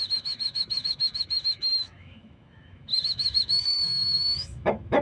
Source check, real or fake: fake